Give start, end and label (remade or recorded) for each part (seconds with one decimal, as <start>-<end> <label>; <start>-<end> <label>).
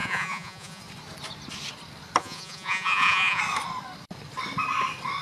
0.0-0.8 remade; 0.8-2.2 recorded; 2.2-3.4 remade; 3.4-5.2 recorded